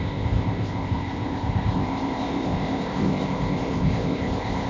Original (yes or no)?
no